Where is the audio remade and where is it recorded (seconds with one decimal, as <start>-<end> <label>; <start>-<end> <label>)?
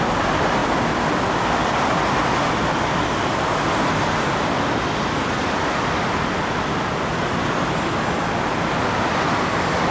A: 0.0-9.9 recorded